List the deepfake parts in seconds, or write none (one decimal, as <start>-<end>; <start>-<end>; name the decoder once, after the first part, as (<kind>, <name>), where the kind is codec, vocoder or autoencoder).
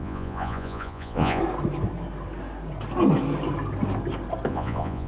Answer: 0.0-1.4 (vocoder, Vocos); 4.5-5.1